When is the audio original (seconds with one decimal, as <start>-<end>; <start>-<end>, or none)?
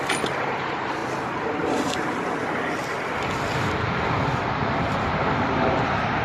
1.0-2.4